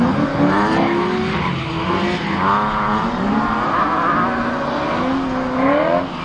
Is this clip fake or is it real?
real